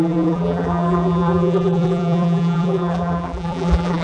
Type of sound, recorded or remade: remade